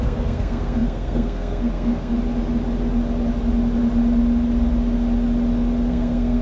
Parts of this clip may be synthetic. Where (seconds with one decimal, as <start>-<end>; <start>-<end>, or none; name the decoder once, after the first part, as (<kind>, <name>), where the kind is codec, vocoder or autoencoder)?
0.0-2.1 (codec, SNAC); 5.9-6.4